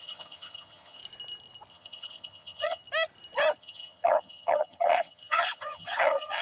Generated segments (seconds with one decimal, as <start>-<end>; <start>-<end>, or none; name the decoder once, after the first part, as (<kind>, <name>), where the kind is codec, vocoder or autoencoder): 0.0-1.0 (vocoder, HiFi-GAN); 1.7-2.8; 3.6-6.4